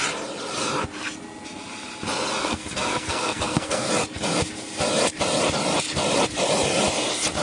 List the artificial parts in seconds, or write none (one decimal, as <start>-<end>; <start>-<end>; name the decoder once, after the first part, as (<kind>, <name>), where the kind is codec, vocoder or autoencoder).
2.4-3.9 (codec, SNAC)